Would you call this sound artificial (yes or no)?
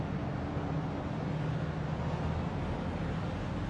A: no